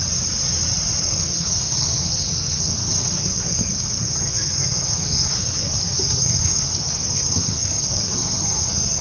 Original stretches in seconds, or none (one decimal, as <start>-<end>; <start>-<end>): 0.0-1.0